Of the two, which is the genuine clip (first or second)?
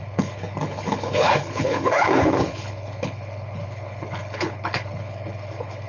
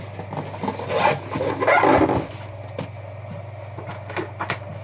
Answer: second